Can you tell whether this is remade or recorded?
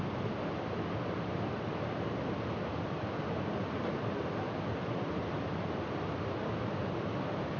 recorded